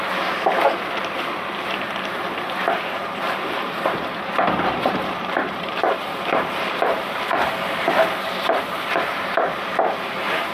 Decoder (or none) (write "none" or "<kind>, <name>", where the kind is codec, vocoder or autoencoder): vocoder, BigVGAN v2